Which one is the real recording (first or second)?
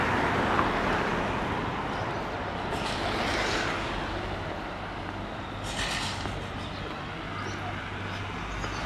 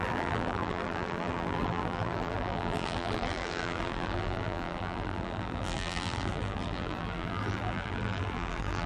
first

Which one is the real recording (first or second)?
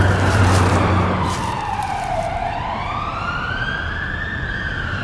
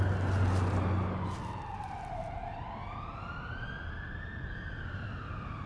second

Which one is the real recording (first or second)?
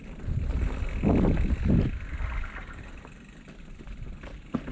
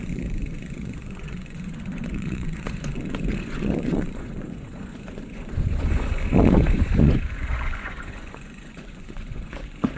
first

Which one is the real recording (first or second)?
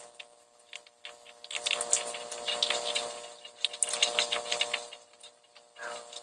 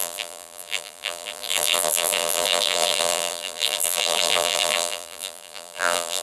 first